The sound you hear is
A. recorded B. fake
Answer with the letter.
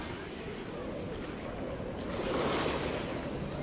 A